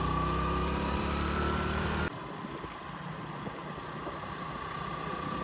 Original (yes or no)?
yes